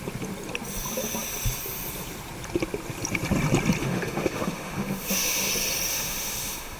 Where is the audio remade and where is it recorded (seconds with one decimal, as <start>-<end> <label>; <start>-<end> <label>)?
0.0-3.8 recorded; 3.8-5.5 remade; 5.5-5.9 recorded; 5.9-6.8 remade